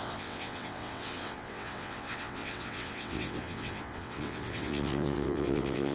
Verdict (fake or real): fake